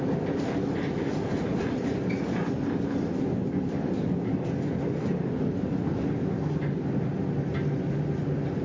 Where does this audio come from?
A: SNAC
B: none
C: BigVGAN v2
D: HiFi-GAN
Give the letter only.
B